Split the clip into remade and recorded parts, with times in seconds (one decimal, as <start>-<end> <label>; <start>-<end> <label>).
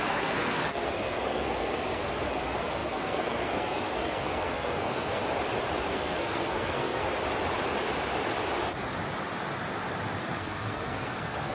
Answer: 0.0-5.2 remade; 5.2-5.9 recorded; 5.9-7.1 remade; 7.1-10.2 recorded; 10.2-11.5 remade